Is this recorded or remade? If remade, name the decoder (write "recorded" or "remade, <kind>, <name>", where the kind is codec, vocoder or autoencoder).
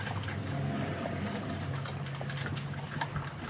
recorded